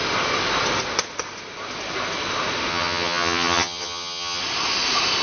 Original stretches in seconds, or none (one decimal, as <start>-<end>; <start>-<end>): 0.0-2.7; 4.4-5.2